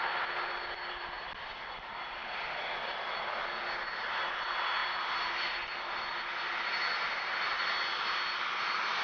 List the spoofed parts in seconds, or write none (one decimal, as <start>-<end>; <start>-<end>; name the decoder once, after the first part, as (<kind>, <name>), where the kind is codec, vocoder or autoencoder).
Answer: none